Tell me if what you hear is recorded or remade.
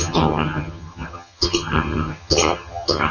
remade